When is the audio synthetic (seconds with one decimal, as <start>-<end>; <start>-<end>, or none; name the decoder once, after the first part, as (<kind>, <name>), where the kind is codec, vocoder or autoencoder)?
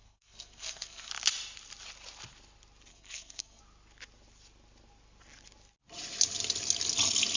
0.0-1.1 (codec, SNAC); 2.9-3.6